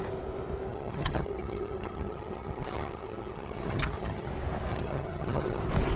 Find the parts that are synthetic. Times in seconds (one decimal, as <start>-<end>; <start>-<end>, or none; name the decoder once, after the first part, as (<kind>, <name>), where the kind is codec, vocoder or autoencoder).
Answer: 0.7-4.3 (vocoder, HiFi-GAN); 4.7-5.6